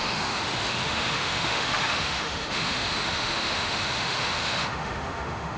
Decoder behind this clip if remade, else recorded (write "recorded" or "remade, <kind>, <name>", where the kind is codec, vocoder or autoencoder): remade, autoencoder, DAC-VAE